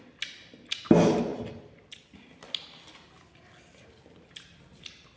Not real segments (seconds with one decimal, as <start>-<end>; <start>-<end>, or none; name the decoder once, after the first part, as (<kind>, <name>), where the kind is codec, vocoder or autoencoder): none